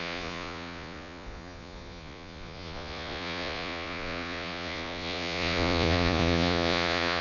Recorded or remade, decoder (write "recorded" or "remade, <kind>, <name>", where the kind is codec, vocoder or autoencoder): remade, vocoder, Vocos